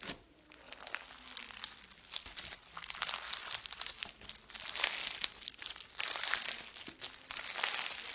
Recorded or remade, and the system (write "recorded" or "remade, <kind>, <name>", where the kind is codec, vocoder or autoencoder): recorded